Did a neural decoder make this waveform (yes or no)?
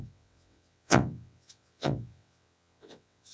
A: yes